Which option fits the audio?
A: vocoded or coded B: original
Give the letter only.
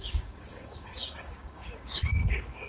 A